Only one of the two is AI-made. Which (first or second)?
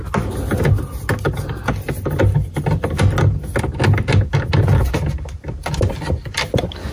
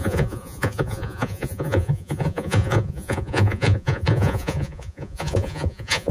second